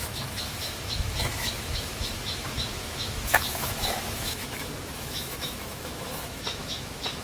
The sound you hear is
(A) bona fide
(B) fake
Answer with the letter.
B